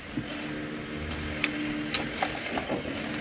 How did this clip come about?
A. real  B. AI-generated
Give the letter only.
A